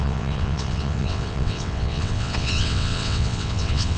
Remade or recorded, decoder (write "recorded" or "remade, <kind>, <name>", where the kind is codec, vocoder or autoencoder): remade, vocoder, WaveNeXt